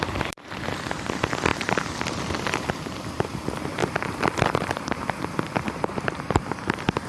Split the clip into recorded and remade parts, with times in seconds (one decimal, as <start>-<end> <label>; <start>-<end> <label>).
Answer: 0.0-3.8 remade; 3.8-5.7 recorded; 5.7-7.1 remade